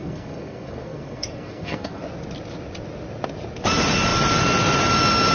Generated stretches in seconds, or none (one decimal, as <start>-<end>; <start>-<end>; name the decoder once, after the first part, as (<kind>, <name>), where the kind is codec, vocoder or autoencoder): 0.0-2.0 (codec, SNAC)